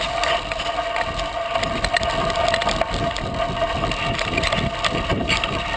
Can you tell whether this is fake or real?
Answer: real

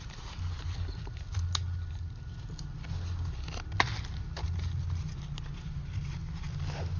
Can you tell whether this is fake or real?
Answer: real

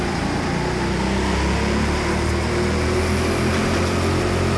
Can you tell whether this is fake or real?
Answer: real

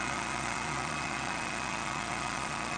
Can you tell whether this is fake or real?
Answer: fake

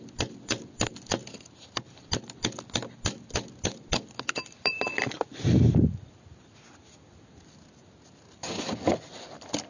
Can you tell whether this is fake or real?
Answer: real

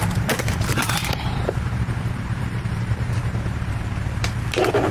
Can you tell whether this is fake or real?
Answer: fake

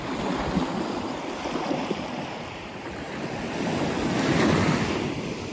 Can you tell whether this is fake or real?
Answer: real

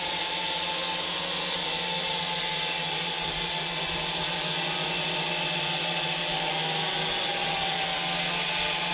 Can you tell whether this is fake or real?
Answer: real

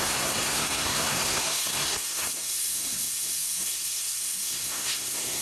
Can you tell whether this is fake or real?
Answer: fake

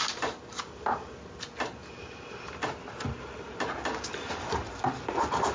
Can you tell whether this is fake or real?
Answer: real